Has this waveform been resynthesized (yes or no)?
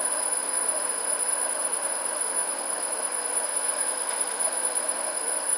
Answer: yes